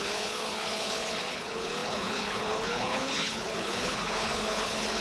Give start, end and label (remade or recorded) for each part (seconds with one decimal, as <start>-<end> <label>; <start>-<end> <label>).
0.0-5.0 remade